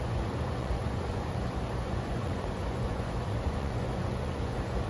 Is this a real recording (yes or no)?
no